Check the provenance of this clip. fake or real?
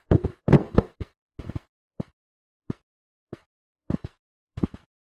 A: fake